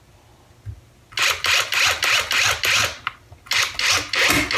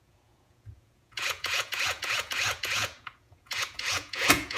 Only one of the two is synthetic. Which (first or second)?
second